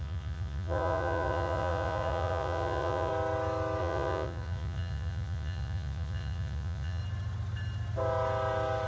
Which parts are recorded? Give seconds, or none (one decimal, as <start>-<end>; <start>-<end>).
3.1-3.8; 7.0-8.9